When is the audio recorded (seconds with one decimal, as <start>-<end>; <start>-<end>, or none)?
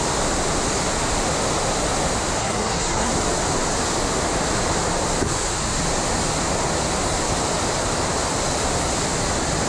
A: 0.0-2.4; 3.1-9.7